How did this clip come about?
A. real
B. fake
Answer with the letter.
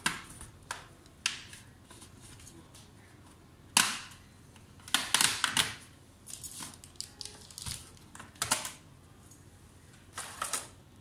A